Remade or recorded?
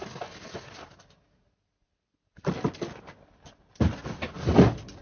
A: recorded